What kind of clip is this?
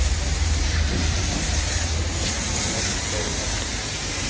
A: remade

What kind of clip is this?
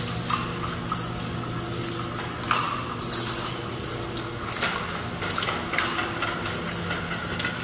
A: recorded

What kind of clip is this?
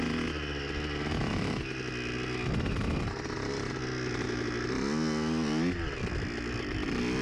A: recorded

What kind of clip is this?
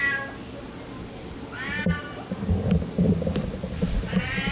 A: recorded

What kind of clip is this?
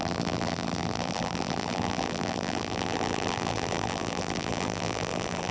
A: remade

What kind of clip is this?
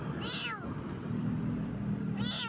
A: recorded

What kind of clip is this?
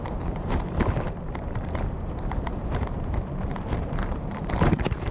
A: remade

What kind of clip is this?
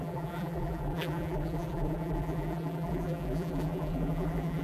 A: remade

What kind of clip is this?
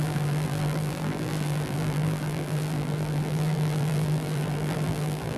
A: remade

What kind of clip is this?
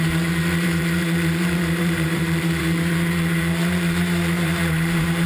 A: remade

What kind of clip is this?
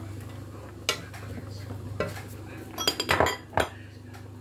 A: recorded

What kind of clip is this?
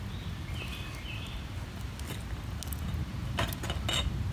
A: recorded